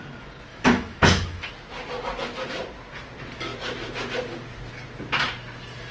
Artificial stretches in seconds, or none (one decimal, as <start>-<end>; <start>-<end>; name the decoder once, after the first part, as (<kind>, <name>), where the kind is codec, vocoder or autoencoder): 0.5-1.5 (autoencoder, DAC-VAE)